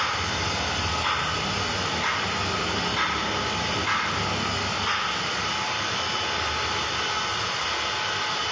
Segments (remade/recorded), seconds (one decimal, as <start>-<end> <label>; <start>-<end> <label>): 0.0-8.5 recorded